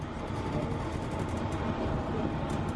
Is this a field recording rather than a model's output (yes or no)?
yes